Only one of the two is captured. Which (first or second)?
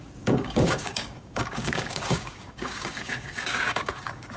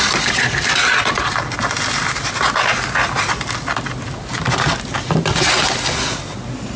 second